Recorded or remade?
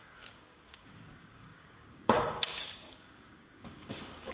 remade